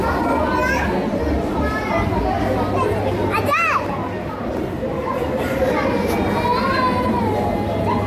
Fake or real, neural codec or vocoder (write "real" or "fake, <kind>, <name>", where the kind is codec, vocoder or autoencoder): real